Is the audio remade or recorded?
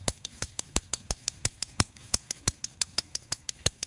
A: remade